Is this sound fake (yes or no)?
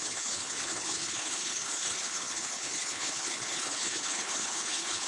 yes